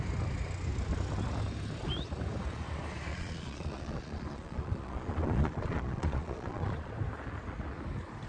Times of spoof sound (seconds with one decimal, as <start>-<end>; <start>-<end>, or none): 3.1-6.9